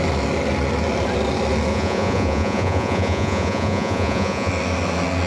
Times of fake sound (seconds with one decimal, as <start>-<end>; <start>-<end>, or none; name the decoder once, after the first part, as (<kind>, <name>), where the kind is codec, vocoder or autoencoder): 1.7-4.5 (vocoder, Vocos)